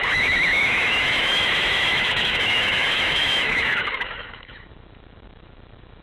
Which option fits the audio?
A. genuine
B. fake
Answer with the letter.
B